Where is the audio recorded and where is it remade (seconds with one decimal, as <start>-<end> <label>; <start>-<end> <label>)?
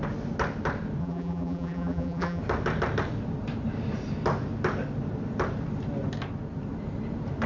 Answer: 0.0-1.0 recorded; 1.0-2.4 remade; 2.4-7.5 recorded